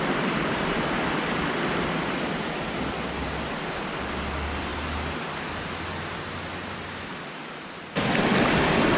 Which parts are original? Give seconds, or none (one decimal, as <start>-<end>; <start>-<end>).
0.0-9.0